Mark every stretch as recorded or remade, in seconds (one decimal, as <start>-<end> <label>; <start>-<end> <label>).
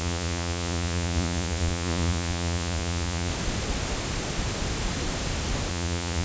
0.0-3.3 remade; 3.3-5.7 recorded; 5.7-6.2 remade